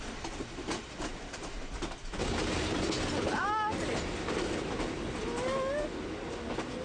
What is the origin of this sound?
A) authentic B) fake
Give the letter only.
A